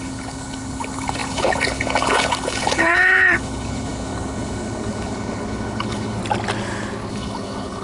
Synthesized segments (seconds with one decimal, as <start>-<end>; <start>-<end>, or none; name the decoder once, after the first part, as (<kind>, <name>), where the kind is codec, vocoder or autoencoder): 0.0-6.2 (codec, HILCodec); 7.1-7.8